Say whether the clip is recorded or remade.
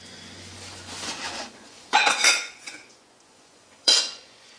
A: remade